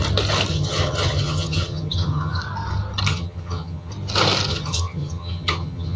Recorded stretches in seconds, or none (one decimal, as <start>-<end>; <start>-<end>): 0.0-0.5; 2.4-3.1; 3.9-4.5